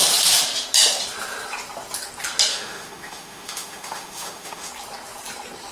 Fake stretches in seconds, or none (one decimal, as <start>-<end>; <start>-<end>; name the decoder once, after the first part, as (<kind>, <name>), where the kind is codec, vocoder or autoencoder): 2.5-4.7 (autoencoder, DAC-VAE)